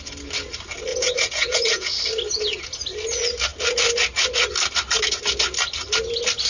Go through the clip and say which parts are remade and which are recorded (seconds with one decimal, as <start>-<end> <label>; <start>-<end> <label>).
0.0-0.9 recorded; 0.9-2.0 remade; 2.0-6.5 recorded